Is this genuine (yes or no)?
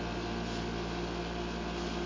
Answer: yes